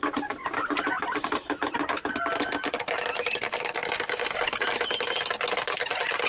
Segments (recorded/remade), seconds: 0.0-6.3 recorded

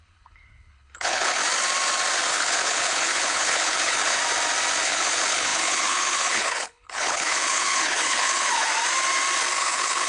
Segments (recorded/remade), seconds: 0.0-1.4 remade; 1.4-2.3 recorded; 2.3-4.2 remade; 4.2-4.8 recorded; 4.8-8.7 remade; 8.7-9.6 recorded; 9.6-10.1 remade

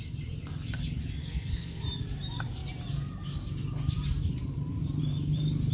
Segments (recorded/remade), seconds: 0.0-1.2 recorded; 1.2-1.8 remade; 1.8-5.7 recorded

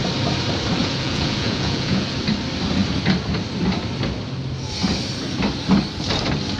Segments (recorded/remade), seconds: 0.0-0.8 recorded; 0.8-2.1 remade; 2.1-6.6 recorded

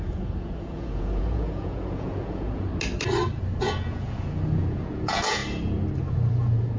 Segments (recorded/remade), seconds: 0.0-2.7 remade; 2.7-3.6 recorded; 3.6-5.4 remade; 5.4-6.1 recorded; 6.1-6.8 remade

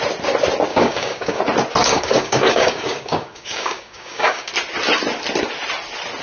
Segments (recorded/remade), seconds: 0.0-0.7 recorded; 0.7-1.4 remade; 1.4-1.8 recorded; 1.8-4.5 remade; 4.5-6.2 recorded

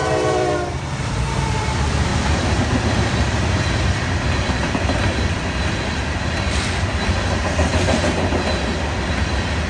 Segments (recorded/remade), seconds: 0.0-2.1 remade; 2.1-4.7 recorded; 4.7-7.7 remade; 7.7-9.7 recorded